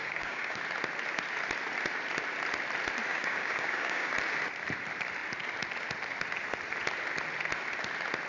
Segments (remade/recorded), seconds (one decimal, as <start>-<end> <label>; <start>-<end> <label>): 0.0-0.6 remade; 0.6-3.1 recorded; 3.1-4.1 remade; 4.1-8.3 recorded